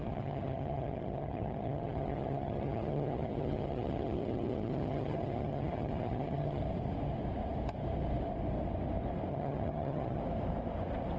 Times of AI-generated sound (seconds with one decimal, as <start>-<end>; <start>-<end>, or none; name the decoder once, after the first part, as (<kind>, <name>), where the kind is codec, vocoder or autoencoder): 0.0-6.6 (vocoder, HiFi-GAN); 9.3-10.2

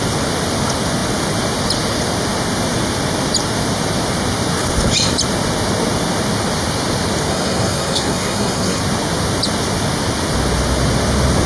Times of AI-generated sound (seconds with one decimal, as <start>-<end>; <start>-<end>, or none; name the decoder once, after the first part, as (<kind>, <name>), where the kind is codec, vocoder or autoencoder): 7.3-8.8 (codec, SNAC)

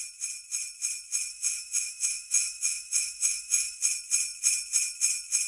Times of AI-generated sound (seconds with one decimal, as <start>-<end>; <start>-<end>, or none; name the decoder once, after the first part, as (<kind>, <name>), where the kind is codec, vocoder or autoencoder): 1.3-3.8 (autoencoder, DAC-VAE)